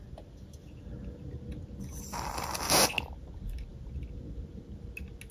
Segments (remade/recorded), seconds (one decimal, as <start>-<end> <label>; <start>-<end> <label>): 0.0-5.3 recorded